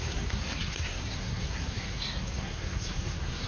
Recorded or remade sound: remade